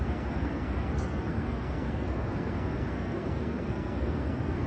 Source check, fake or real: fake